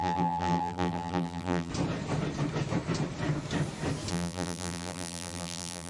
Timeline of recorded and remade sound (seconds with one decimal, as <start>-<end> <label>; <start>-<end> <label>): 0.0-1.7 remade; 1.7-4.1 recorded; 4.1-5.9 remade